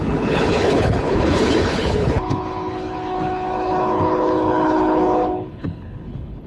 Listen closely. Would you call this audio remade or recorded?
remade